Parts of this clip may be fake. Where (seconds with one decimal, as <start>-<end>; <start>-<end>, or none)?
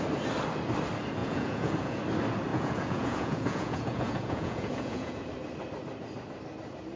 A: 1.2-2.0; 2.5-5.2